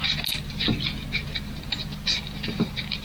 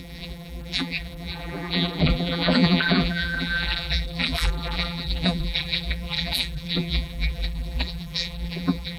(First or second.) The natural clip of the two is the first